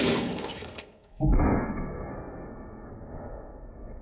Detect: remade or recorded remade